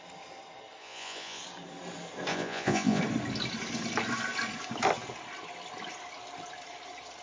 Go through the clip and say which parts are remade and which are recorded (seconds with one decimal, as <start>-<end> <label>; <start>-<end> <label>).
0.0-0.8 recorded; 0.8-1.4 remade; 1.4-2.3 recorded; 2.3-3.0 remade; 3.0-7.2 recorded